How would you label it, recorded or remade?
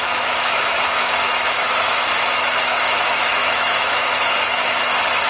remade